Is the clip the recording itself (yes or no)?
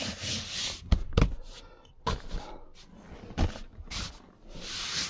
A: yes